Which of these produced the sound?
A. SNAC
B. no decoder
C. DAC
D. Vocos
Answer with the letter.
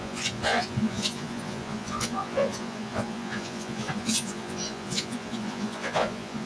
D